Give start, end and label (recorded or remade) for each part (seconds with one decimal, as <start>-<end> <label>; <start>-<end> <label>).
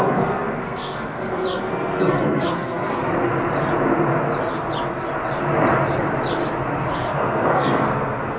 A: 0.0-3.1 remade; 3.1-6.9 recorded; 6.9-8.4 remade